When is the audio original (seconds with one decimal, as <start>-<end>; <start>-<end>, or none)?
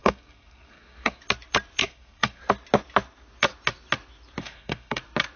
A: 1.2-1.8; 2.4-4.4; 5.0-5.4